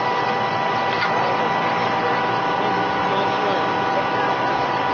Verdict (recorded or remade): recorded